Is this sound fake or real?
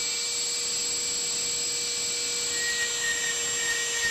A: real